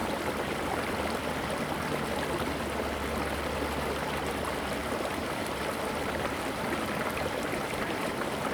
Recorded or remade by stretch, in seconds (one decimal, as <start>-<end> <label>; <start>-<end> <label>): 0.0-1.2 remade; 1.2-4.8 recorded; 4.8-8.1 remade; 8.1-8.5 recorded

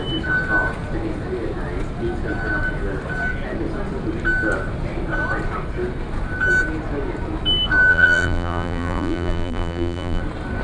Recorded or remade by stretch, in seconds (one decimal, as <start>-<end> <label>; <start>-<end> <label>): 0.0-7.9 recorded; 7.9-10.2 remade; 10.2-10.6 recorded

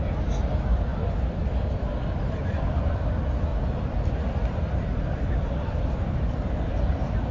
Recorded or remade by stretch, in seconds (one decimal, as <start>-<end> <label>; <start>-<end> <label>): 0.0-0.9 remade; 0.9-2.1 recorded; 2.1-3.5 remade; 3.5-4.4 recorded; 4.4-7.3 remade